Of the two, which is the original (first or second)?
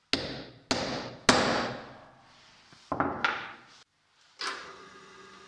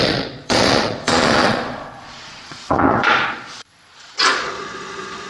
first